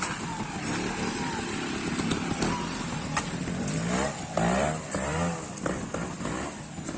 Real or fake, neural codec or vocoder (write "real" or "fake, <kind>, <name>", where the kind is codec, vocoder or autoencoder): real